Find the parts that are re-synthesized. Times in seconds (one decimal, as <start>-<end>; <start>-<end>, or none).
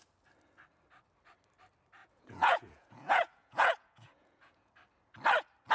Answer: 2.0-4.7